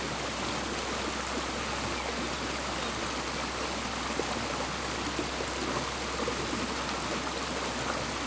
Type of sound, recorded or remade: recorded